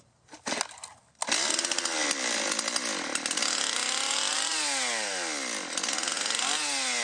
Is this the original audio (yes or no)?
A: yes